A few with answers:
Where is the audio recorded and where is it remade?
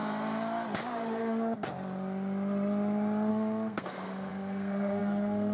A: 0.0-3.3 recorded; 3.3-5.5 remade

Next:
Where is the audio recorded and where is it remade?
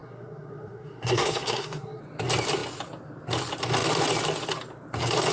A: 0.0-2.0 remade; 2.0-5.3 recorded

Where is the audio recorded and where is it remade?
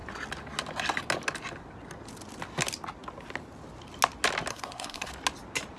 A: 0.0-4.5 recorded; 4.5-5.1 remade; 5.1-5.8 recorded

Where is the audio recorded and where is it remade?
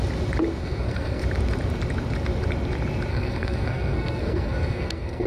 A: 0.0-0.6 recorded; 0.6-1.2 remade; 1.2-3.1 recorded; 3.1-5.3 remade